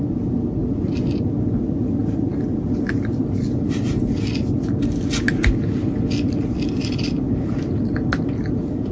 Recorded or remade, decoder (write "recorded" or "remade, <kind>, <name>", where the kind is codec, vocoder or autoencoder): recorded